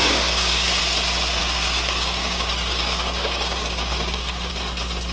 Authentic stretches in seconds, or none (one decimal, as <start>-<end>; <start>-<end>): 0.8-1.4; 4.5-5.1